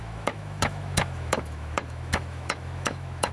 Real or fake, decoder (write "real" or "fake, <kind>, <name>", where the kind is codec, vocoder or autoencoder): fake, autoencoder, DAC-VAE